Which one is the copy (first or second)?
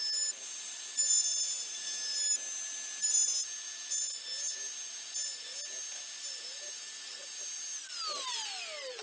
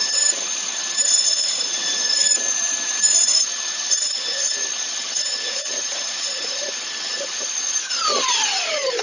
second